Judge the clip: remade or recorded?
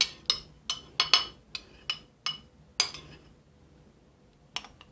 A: recorded